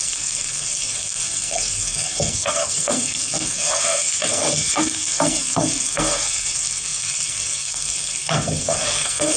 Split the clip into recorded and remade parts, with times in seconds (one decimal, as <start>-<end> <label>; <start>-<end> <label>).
0.0-9.4 remade

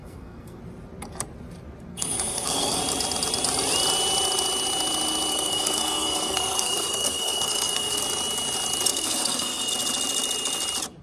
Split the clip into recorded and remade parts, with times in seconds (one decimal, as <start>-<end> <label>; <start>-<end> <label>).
0.0-0.6 remade; 0.6-1.9 recorded; 1.9-2.8 remade; 2.8-5.3 recorded; 5.3-8.0 remade; 8.0-8.9 recorded; 8.9-9.7 remade; 9.7-11.0 recorded

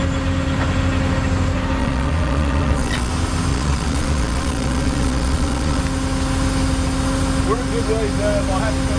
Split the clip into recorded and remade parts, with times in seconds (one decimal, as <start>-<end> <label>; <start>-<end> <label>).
0.0-1.8 recorded; 1.8-3.1 remade; 3.1-3.5 recorded; 3.5-5.8 remade; 5.8-9.0 recorded